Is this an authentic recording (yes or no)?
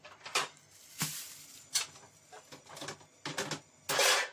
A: yes